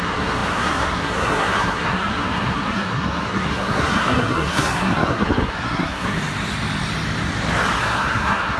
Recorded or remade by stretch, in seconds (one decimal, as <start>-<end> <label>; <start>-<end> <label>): 0.0-6.2 remade; 6.2-7.8 recorded; 7.8-8.6 remade